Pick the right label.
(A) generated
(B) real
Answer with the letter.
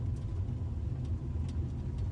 B